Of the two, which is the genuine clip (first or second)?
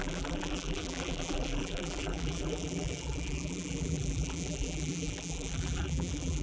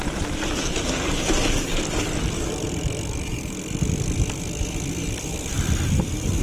second